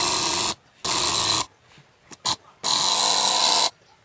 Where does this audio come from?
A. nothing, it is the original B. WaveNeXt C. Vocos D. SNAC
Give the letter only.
A